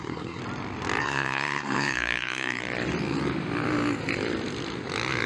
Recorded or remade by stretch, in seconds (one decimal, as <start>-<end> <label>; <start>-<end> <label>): 0.0-0.4 remade; 0.4-1.0 recorded; 1.0-2.6 remade; 2.6-5.3 recorded